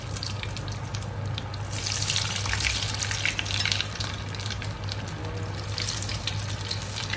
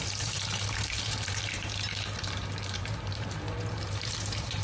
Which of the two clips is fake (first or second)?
second